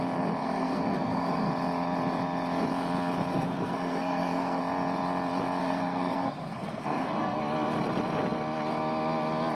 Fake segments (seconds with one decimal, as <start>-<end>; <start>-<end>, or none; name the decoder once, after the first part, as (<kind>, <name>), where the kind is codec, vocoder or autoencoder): 0.4-1.5 (codec, SNAC); 3.3-4.6; 5.6-7.4